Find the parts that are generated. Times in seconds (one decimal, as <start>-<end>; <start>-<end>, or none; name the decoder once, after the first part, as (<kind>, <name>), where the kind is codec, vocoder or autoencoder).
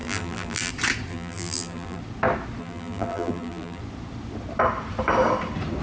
0.0-0.7 (vocoder, BigVGAN v2); 1.1-2.0; 2.6-3.8